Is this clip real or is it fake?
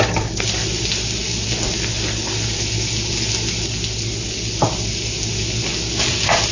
real